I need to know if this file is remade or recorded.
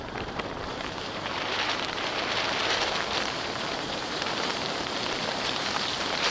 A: remade